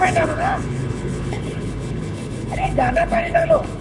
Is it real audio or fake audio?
fake